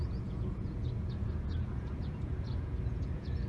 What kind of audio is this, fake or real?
fake